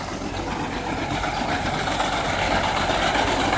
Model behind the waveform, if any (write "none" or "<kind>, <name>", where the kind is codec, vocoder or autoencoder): none